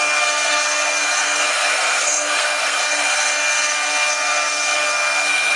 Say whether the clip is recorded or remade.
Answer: remade